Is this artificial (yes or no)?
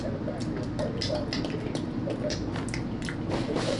no